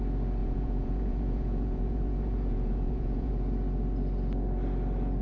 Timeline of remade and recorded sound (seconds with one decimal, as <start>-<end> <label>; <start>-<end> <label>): 0.0-0.4 recorded; 0.4-3.3 remade; 3.3-5.2 recorded